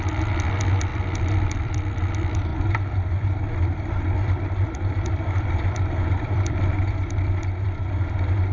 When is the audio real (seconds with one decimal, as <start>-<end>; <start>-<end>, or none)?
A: 0.0-0.9; 2.1-2.5; 6.9-8.5